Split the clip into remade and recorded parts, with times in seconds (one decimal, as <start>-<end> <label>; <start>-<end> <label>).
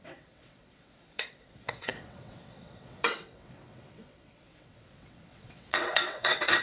0.0-6.6 remade